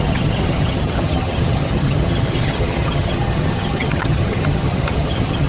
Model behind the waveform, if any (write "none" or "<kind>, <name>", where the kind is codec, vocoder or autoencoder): vocoder, HiFi-GAN